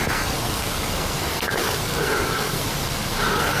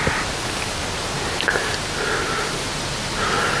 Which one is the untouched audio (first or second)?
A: second